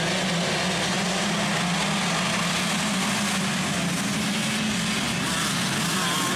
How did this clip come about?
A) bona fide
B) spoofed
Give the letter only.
A